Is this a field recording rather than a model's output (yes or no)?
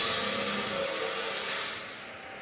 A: yes